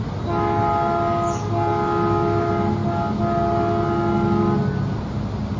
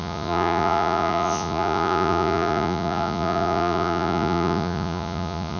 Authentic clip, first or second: first